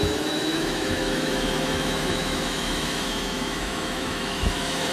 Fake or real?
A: fake